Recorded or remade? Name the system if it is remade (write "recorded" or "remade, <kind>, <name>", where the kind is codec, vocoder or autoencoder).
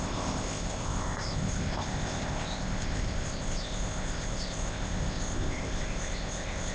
remade, codec, ZipCodec